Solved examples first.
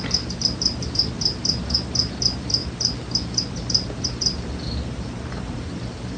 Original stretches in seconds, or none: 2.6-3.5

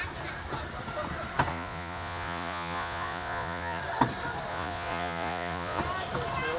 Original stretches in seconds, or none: 0.0-1.5; 3.8-4.5; 5.8-6.6

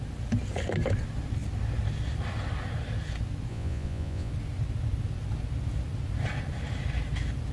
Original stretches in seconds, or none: 0.0-3.5; 4.3-7.5

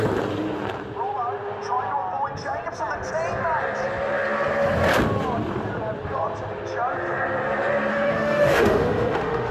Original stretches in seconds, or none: 0.0-7.9

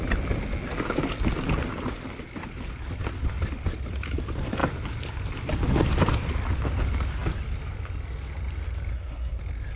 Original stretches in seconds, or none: 0.0-8.9; 9.4-9.8

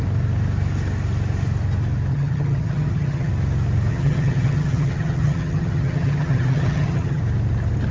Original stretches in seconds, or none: 0.0-2.1; 3.3-3.9; 7.2-7.9

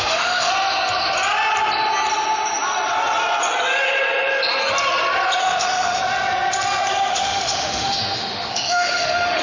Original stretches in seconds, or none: 0.5-5.4; 6.0-7.1

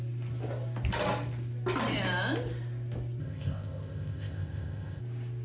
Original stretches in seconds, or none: 0.0-3.2; 5.0-5.4